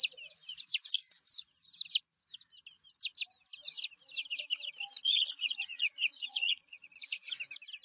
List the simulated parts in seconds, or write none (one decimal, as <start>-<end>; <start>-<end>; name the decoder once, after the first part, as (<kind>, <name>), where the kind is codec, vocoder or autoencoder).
1.0-1.7 (vocoder, Vocos); 5.0-7.3